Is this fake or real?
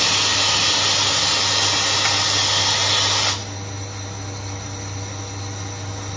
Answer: real